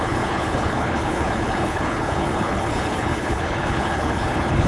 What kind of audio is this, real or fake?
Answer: fake